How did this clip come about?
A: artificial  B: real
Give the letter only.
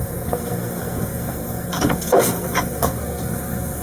A